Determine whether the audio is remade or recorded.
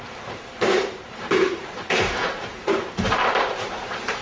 remade